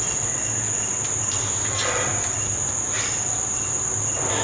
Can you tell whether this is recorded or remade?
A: recorded